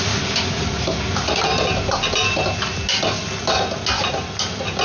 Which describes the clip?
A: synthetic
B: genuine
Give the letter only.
B